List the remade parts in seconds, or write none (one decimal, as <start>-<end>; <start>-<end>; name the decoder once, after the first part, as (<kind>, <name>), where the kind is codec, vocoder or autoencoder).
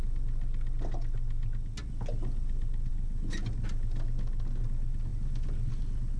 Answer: none